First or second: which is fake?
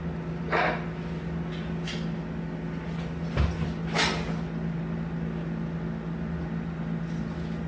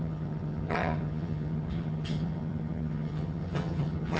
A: second